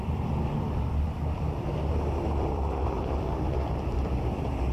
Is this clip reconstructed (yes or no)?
yes